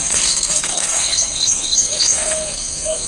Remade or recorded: remade